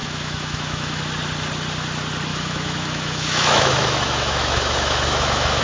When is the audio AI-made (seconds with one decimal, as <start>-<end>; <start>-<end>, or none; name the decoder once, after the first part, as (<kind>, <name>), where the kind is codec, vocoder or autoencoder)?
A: 0.0-1.0 (autoencoder, DAC-VAE); 2.3-5.6